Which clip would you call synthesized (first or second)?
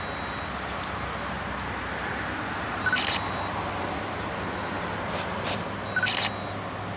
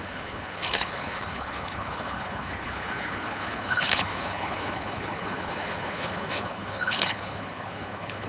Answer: second